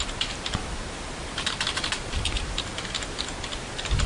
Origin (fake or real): fake